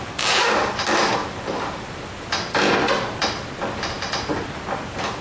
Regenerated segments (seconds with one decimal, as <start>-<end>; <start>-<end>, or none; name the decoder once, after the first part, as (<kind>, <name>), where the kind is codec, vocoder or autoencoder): none